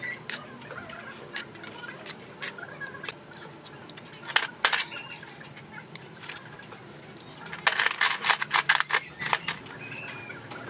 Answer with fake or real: real